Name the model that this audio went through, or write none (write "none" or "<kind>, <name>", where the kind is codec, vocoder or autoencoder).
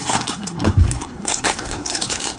codec, SNAC